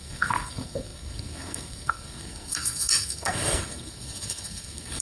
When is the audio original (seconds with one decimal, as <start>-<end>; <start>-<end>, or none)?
none